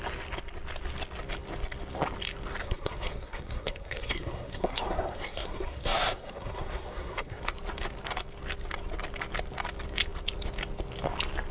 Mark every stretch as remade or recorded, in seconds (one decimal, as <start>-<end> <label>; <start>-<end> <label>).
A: 0.0-2.6 recorded; 2.6-7.4 remade; 7.4-11.5 recorded